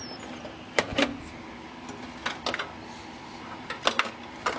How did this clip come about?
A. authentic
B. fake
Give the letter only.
A